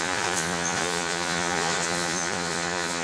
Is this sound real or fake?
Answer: fake